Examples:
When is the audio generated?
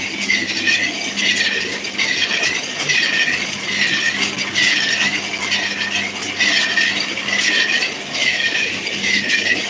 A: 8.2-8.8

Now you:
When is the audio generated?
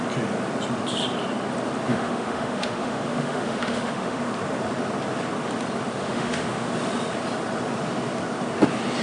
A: 1.9-4.2; 6.0-6.7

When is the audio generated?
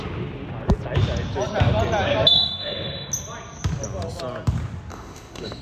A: 2.3-3.1; 4.9-5.6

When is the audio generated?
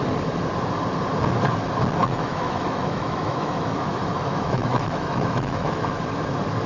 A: 2.0-6.0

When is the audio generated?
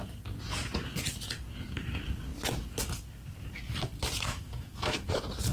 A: 4.3-5.1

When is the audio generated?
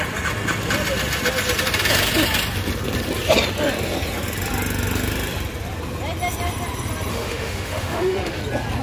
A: 7.1-8.4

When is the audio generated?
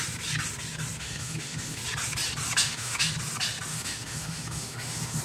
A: 1.0-1.8; 2.6-3.1; 3.7-5.2